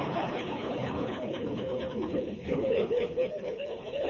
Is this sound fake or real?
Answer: fake